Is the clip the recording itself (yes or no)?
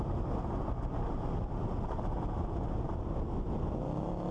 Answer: yes